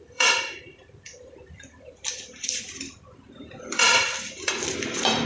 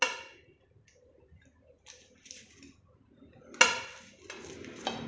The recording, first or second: second